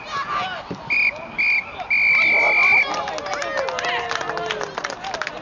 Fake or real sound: real